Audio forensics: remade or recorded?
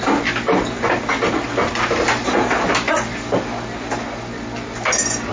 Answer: recorded